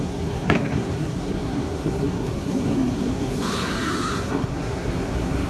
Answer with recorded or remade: remade